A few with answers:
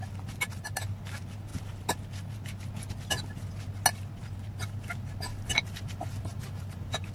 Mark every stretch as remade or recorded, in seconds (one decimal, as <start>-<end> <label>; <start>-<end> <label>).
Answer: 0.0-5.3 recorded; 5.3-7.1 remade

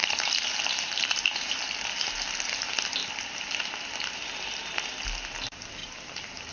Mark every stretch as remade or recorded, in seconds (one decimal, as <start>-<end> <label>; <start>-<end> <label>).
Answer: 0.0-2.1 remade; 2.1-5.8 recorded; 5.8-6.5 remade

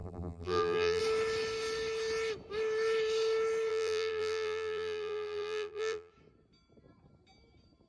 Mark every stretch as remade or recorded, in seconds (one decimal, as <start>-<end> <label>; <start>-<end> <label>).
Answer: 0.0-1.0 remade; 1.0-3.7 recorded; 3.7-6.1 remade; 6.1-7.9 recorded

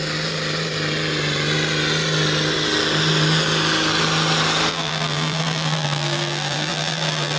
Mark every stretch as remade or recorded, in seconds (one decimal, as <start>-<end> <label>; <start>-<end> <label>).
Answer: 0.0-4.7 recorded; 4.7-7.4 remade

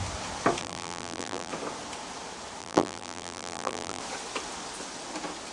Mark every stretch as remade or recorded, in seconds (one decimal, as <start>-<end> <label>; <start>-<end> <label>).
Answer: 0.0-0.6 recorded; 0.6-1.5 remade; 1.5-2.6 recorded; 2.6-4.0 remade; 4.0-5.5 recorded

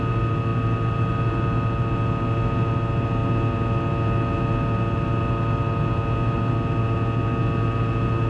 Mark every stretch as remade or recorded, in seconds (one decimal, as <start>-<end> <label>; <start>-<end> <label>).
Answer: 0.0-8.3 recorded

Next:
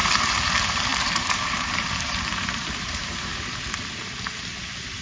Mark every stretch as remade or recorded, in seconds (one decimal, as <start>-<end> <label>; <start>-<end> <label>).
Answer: 0.0-0.5 recorded; 0.5-3.3 remade; 3.3-4.5 recorded; 4.5-5.0 remade